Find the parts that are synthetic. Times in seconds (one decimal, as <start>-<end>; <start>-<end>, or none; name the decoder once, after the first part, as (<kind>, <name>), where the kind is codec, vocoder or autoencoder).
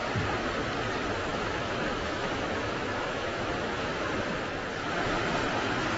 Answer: 1.3-4.1 (autoencoder, DAC-VAE)